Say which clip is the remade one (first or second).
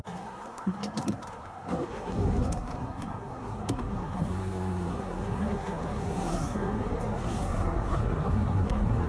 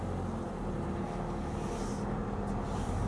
first